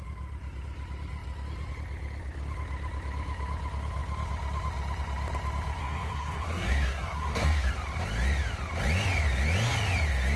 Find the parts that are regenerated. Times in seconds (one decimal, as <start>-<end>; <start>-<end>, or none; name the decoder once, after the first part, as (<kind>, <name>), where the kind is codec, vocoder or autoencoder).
5.8-7.7 (codec, SNAC)